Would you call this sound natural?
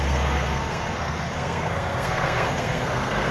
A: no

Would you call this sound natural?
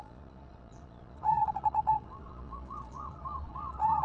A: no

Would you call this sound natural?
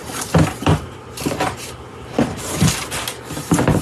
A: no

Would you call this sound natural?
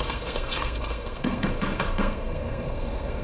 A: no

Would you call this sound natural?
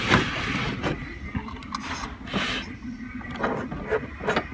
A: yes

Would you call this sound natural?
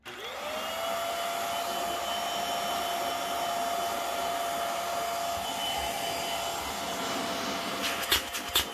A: yes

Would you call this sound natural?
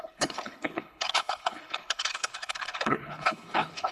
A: no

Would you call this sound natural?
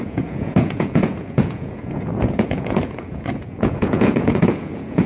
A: no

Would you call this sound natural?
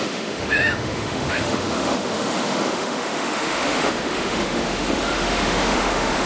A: no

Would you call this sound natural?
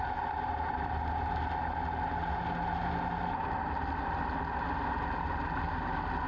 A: yes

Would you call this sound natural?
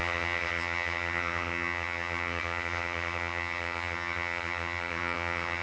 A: no